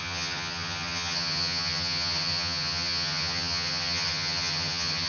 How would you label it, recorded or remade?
remade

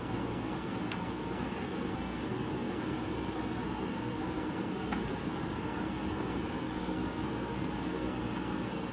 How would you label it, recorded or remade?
remade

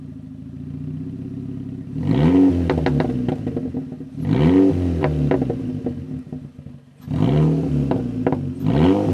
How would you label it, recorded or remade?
recorded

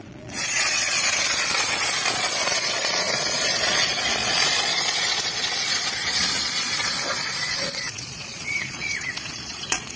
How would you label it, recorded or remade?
remade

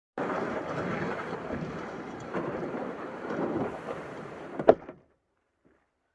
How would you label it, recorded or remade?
remade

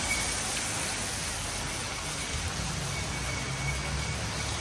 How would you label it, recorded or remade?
recorded